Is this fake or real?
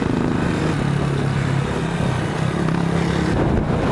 real